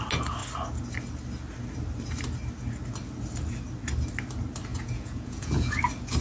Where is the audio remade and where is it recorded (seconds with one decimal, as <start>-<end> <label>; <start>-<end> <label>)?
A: 0.0-4.7 recorded; 4.7-5.8 remade; 5.8-6.2 recorded